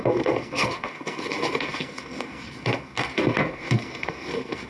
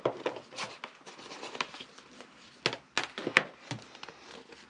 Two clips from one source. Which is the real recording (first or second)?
second